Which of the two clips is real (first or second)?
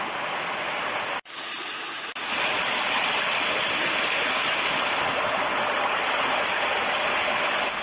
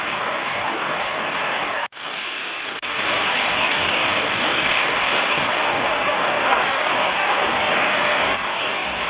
first